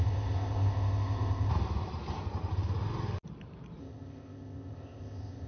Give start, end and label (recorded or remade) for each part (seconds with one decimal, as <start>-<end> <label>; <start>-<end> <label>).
0.0-1.5 remade; 1.5-3.8 recorded; 3.8-5.5 remade